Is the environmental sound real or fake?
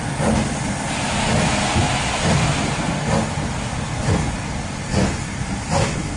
real